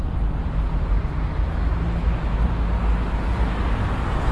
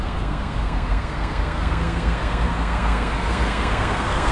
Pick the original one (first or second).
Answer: first